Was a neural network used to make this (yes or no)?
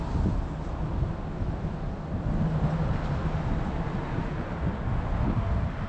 no